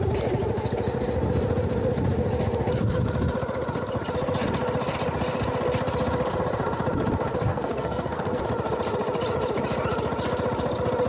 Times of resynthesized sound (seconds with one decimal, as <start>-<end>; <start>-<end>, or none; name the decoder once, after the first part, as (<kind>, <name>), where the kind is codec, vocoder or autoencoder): 7.5-8.4 (codec, SNAC)